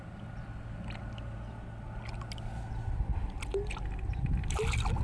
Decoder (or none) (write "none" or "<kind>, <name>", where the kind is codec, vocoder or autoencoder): none